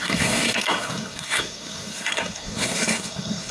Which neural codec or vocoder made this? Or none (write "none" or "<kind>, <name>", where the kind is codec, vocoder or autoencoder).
codec, SNAC